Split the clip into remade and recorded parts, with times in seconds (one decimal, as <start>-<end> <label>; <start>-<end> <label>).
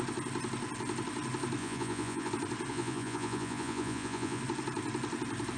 0.0-1.6 recorded; 1.6-2.3 remade; 2.3-2.7 recorded; 2.7-4.4 remade; 4.4-5.6 recorded